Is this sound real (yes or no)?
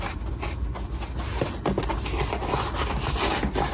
yes